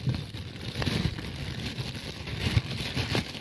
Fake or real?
fake